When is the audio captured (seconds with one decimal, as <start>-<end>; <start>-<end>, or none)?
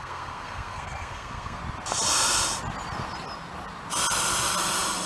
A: 1.6-5.1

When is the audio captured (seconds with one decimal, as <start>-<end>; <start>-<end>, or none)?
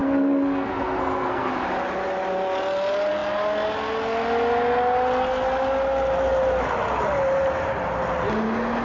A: 1.5-8.8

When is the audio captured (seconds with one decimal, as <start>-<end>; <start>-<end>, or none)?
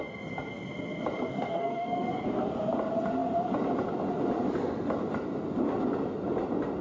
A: 0.0-1.3; 2.2-6.8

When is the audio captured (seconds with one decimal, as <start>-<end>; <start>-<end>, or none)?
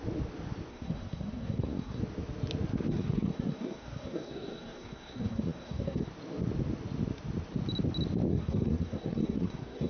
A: 0.0-0.7; 2.0-2.9; 6.1-8.3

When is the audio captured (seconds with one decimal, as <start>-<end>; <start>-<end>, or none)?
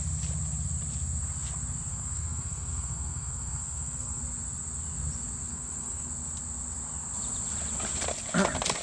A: 0.0-1.9; 4.2-5.5; 6.1-8.8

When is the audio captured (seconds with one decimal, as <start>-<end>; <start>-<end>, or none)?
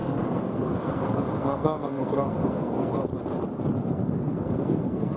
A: 3.1-3.8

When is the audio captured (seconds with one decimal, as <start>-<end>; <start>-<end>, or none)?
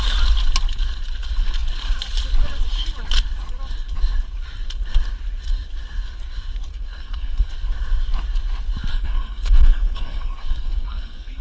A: 0.0-6.7; 7.5-8.9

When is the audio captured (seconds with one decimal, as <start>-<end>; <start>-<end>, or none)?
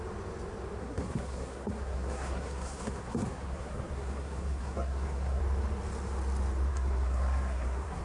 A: 0.0-0.8; 5.4-6.7